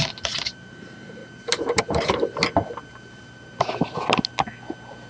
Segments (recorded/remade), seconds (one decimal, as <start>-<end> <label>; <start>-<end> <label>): 0.0-1.2 remade; 1.2-1.8 recorded; 1.8-2.4 remade; 2.4-5.1 recorded